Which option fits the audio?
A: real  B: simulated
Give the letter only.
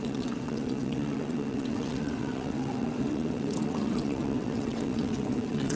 B